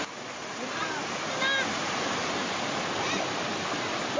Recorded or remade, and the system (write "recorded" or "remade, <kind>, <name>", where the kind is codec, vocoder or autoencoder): recorded